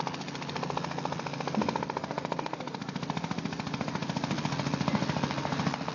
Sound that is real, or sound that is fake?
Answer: real